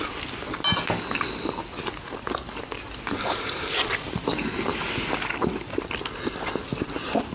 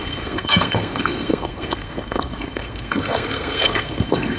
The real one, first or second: first